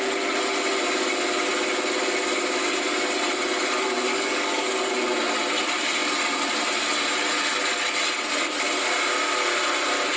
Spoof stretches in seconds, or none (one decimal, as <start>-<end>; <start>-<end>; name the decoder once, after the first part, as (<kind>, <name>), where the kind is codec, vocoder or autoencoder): 4.1-4.9 (codec, DAC)